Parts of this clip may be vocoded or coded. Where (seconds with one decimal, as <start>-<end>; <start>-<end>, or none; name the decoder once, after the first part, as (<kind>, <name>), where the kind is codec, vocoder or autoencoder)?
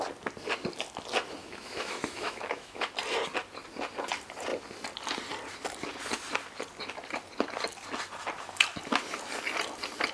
1.4-2.9 (autoencoder, DAC-VAE)